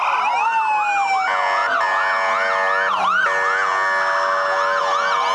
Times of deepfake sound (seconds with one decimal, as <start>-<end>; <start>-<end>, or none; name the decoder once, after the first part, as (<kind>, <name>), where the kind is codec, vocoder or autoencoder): none